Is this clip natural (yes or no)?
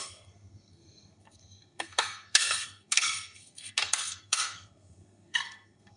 no